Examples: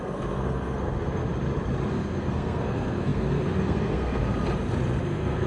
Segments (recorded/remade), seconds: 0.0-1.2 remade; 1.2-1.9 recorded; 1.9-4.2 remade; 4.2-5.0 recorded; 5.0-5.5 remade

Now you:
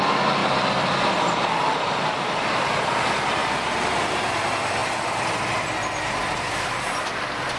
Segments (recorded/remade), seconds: 0.0-7.6 recorded

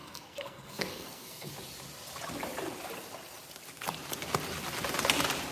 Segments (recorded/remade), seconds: 0.0-1.5 remade; 1.5-5.5 recorded

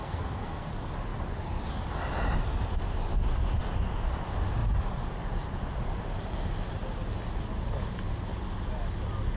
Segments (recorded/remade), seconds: 0.0-0.7 remade; 0.7-9.4 recorded

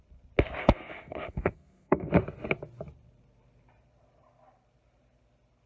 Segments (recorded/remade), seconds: 0.0-0.6 recorded; 0.6-2.1 remade; 2.1-5.7 recorded

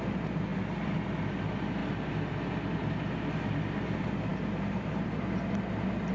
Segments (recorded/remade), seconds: 0.0-6.1 recorded

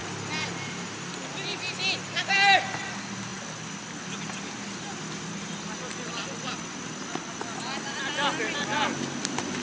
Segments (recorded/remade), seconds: 0.0-9.6 recorded